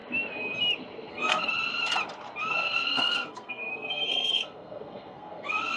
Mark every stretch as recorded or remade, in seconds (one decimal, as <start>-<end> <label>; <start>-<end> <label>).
0.0-1.1 recorded; 1.1-1.5 remade; 1.5-2.5 recorded; 2.5-5.8 remade